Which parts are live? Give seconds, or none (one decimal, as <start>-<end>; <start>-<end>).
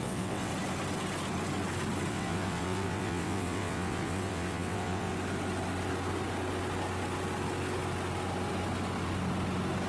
0.5-2.1; 5.1-9.9